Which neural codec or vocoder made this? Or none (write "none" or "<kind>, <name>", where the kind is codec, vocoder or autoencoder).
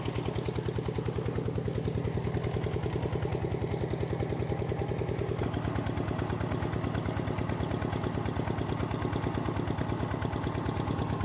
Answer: none